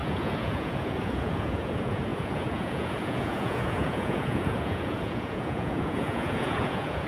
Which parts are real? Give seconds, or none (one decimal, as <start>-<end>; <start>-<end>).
none